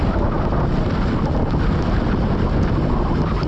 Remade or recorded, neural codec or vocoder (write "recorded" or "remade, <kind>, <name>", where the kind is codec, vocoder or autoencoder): recorded